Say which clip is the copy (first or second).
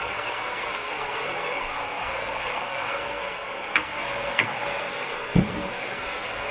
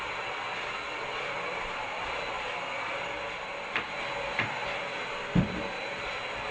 first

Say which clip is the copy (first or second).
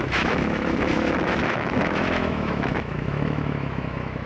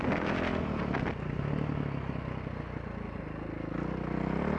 first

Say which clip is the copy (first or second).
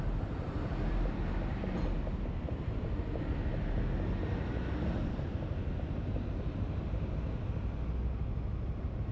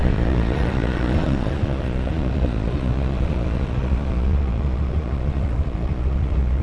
second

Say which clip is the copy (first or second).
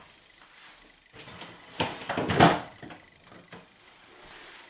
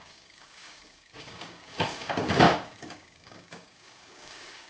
second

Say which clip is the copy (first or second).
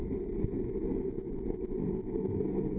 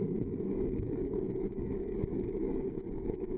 second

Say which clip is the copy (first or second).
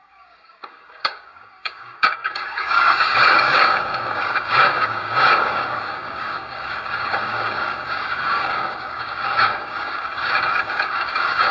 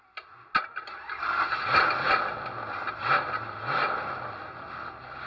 first